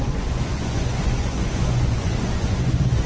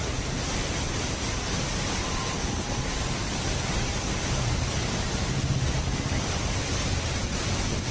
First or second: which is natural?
second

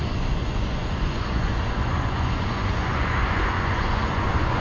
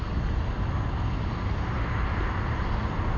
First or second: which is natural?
second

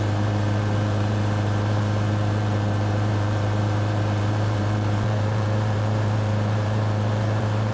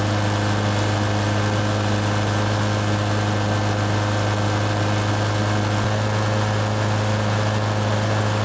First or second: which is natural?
second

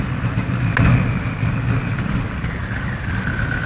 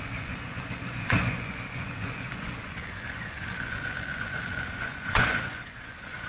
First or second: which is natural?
first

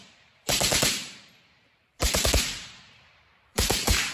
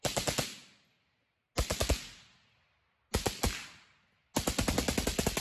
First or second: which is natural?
second